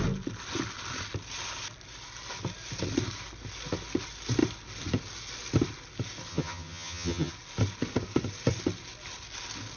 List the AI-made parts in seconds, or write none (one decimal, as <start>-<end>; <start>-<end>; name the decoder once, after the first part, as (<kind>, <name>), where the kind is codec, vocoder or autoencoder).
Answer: 6.3-7.3 (vocoder, HiFi-GAN)